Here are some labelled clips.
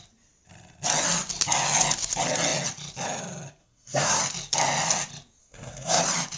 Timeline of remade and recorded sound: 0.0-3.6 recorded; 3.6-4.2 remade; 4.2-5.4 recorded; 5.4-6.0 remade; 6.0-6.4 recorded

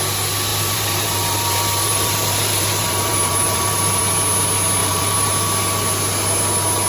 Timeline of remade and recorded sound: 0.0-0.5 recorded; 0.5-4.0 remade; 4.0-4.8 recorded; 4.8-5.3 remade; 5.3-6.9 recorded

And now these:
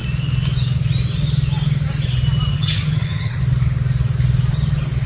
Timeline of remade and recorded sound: 0.0-2.5 recorded; 2.5-3.4 remade; 3.4-5.1 recorded